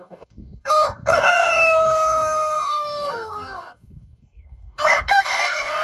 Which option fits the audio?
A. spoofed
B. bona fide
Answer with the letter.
A